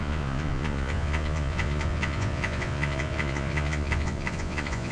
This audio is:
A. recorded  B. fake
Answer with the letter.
B